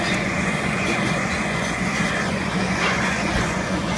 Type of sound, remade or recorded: remade